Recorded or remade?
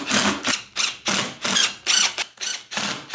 recorded